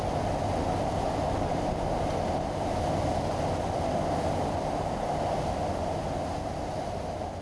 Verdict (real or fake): real